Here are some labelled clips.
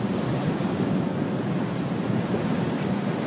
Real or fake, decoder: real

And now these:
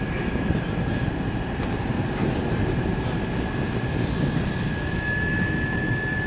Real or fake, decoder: real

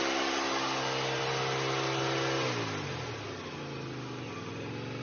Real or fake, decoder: real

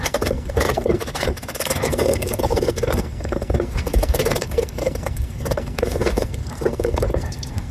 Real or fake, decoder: fake, codec, SNAC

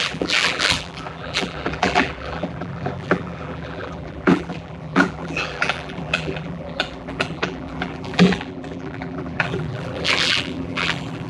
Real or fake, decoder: fake, vocoder, BigVGAN v2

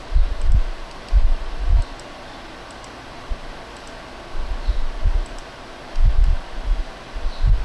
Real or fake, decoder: real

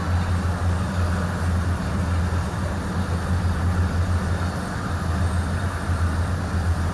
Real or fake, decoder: real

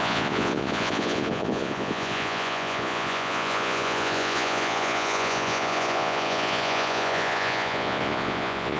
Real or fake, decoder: fake, vocoder, Vocos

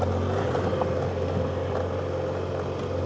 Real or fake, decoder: real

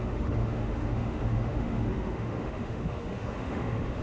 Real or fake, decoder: fake, autoencoder, DAC-VAE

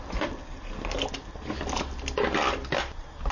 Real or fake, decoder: real